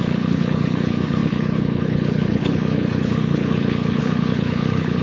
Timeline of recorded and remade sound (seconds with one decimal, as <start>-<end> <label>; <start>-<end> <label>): 0.0-5.0 remade